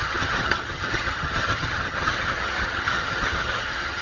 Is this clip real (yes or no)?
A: no